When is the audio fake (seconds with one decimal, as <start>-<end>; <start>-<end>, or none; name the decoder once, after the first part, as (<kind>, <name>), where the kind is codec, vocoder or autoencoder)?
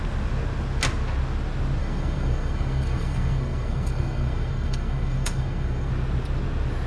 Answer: 1.8-5.9 (codec, SNAC)